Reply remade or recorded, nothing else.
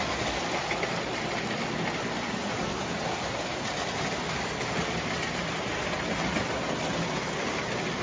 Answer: recorded